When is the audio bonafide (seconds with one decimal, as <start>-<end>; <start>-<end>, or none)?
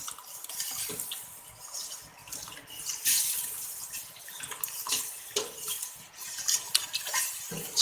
2.2-5.8